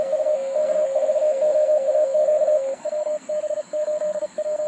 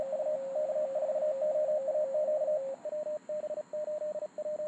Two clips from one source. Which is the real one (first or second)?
second